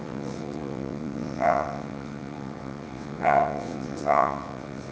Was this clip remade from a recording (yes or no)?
yes